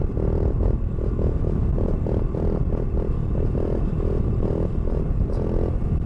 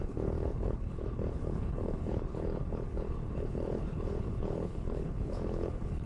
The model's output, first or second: second